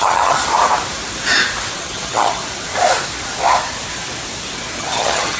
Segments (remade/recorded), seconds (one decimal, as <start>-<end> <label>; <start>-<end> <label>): 0.0-0.4 remade; 0.4-1.7 recorded; 1.7-2.4 remade; 2.4-4.8 recorded; 4.8-5.4 remade